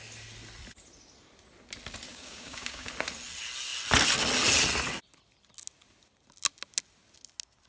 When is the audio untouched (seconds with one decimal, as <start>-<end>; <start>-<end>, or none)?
0.0-2.1; 2.9-7.7